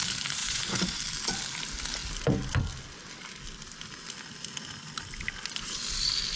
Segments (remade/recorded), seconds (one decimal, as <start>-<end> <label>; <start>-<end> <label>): 0.0-0.4 recorded; 0.4-1.0 remade; 1.0-6.4 recorded